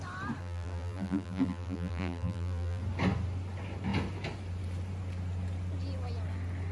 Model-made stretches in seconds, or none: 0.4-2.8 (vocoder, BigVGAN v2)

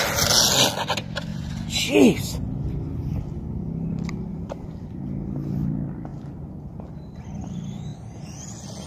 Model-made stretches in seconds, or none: 4.3-5.0 (vocoder, BigVGAN v2)

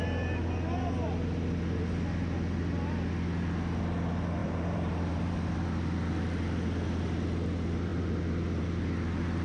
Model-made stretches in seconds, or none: 4.4-5.5 (vocoder, BigVGAN v2)

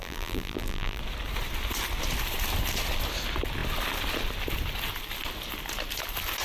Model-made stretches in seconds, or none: 0.0-1.0 (vocoder, BigVGAN v2)